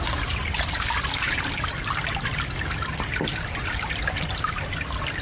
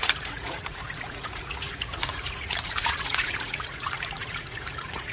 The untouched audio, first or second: first